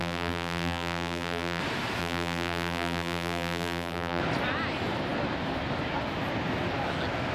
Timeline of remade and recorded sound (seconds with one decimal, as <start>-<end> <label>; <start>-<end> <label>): 0.0-1.6 remade; 1.6-2.0 recorded; 2.0-4.2 remade; 4.2-7.3 recorded